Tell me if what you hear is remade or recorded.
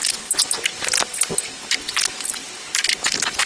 recorded